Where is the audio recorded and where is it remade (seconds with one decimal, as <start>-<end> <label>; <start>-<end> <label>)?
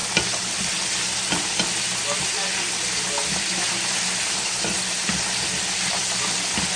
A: 0.0-6.8 recorded